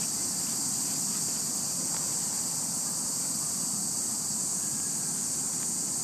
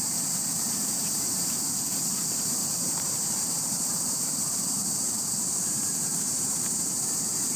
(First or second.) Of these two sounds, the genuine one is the first